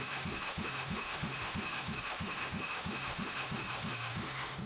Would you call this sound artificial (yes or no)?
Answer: yes